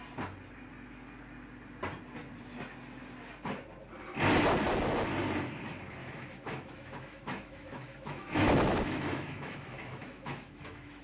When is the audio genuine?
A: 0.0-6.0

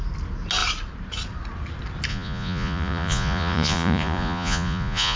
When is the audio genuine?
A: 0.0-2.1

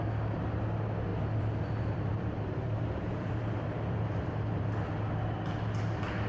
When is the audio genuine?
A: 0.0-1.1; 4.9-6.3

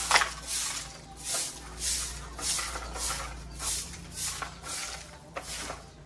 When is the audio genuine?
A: 0.0-6.1

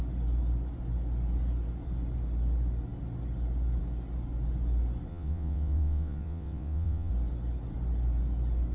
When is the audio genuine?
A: 0.0-5.1; 7.1-8.7